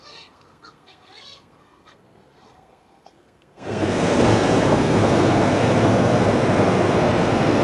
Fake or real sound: fake